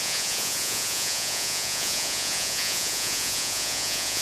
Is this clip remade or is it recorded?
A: remade